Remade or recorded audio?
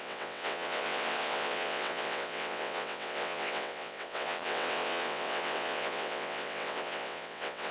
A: remade